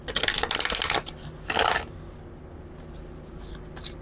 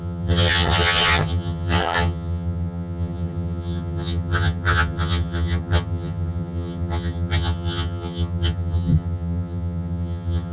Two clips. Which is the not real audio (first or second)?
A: second